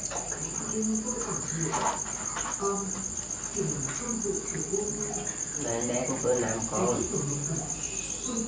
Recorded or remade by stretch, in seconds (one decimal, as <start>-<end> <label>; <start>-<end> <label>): 0.0-8.5 recorded